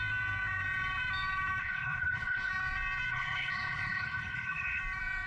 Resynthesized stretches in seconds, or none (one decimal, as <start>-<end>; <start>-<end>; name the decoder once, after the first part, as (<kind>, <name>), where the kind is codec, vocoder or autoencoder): 1.6-2.5 (codec, HILCodec); 3.1-4.8